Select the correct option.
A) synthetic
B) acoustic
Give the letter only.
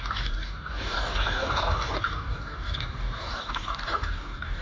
A